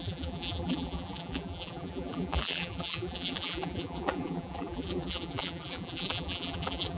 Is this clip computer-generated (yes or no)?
yes